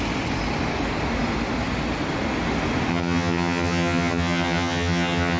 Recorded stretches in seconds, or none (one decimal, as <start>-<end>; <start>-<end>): 0.0-2.9